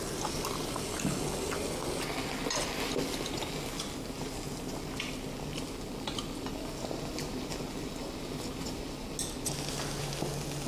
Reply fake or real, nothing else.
real